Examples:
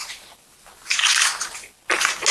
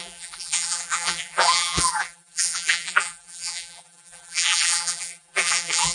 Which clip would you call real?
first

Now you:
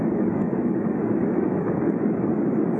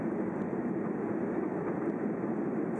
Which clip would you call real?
second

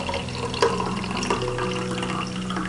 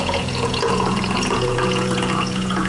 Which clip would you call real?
first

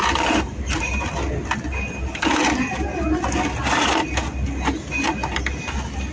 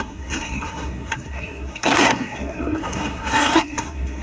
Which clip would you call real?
first